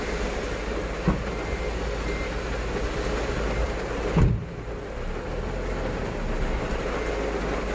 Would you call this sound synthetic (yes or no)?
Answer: no